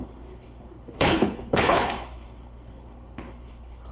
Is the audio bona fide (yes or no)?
no